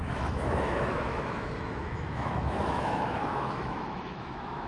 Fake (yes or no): yes